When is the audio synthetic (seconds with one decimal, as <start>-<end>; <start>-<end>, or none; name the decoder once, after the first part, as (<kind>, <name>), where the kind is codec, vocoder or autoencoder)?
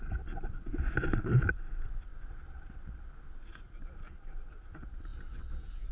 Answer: none